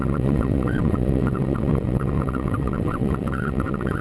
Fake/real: fake